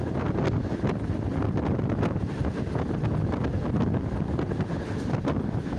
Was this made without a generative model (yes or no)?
yes